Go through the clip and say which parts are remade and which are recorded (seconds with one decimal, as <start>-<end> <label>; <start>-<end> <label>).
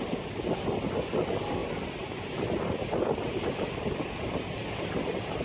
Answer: 0.0-5.4 recorded